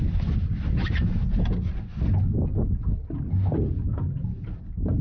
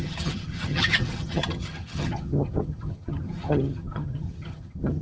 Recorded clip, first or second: first